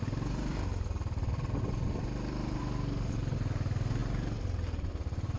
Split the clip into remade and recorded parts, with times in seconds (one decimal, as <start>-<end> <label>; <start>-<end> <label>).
0.0-0.5 recorded; 0.5-2.6 remade; 2.6-4.0 recorded; 4.0-5.4 remade